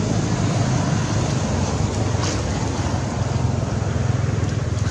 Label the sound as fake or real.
real